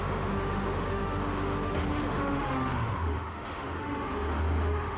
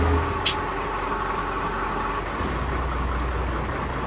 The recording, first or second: second